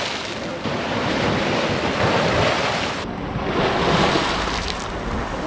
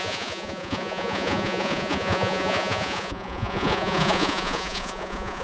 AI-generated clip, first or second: second